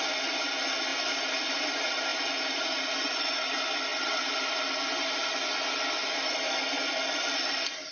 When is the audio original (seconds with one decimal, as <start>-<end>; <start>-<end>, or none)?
0.0-7.9